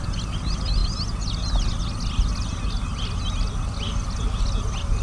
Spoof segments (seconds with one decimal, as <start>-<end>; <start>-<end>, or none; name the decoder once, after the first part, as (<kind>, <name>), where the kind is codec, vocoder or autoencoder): none